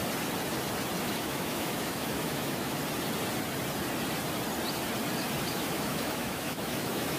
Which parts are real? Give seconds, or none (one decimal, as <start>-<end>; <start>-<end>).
0.0-1.0; 2.8-5.5